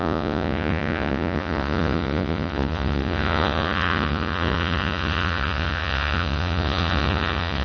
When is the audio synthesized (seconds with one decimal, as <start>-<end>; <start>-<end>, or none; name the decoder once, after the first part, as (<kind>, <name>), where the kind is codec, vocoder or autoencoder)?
0.0-7.6 (vocoder, Vocos)